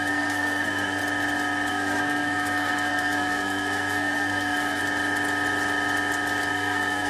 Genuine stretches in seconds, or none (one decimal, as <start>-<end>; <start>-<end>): 1.0-1.7; 4.8-6.5